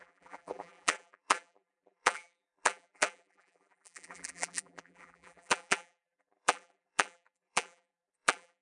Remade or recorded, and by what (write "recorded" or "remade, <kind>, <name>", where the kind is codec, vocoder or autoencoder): remade, vocoder, BigVGAN v2